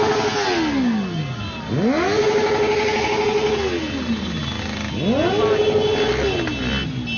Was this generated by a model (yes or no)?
no